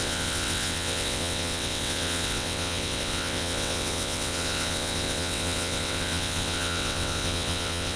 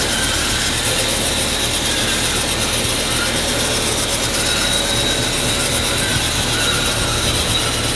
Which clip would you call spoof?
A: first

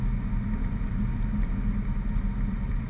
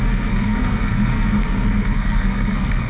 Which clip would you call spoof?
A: second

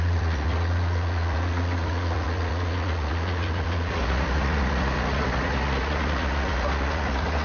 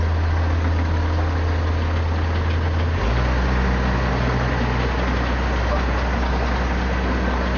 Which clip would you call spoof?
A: first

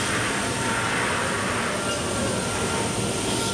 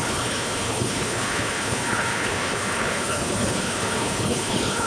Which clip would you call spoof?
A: second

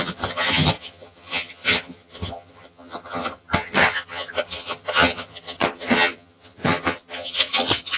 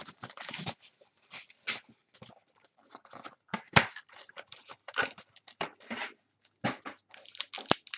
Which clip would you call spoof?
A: first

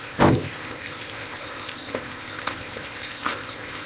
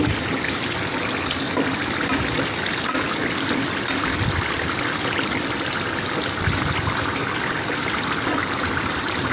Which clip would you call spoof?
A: first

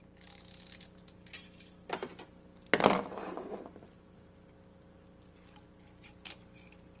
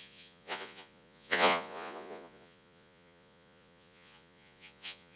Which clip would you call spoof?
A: second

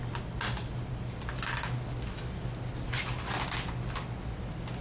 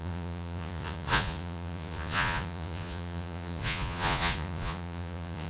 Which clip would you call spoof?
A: second